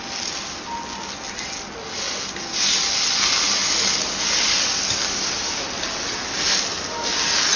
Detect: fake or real real